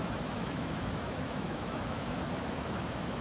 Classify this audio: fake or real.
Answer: fake